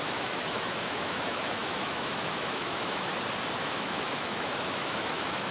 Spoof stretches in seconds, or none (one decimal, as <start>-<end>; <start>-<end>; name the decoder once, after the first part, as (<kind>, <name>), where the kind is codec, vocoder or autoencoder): 0.0-3.1 (autoencoder, DAC-VAE); 3.6-5.5